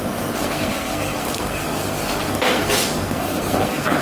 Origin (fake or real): fake